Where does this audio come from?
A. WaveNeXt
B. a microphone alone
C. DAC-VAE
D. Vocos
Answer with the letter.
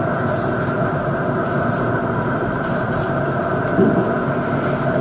B